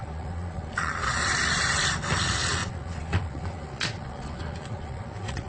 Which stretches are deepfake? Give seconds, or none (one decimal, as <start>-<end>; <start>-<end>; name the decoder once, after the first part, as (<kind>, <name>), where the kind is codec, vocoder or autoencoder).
0.0-1.2 (vocoder, Vocos); 2.2-5.5